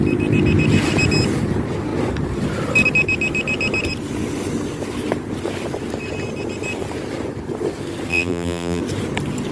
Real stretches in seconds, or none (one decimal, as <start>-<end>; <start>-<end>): 0.0-8.1; 8.8-9.5